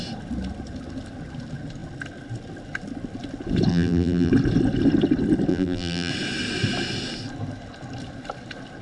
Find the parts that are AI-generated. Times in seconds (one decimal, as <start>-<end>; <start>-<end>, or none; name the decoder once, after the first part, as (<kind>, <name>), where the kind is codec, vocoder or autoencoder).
3.7-4.3 (vocoder, BigVGAN v2); 5.5-6.1